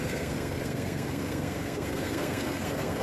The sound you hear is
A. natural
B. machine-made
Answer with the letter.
B